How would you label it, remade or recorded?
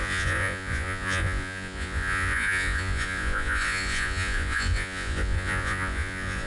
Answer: remade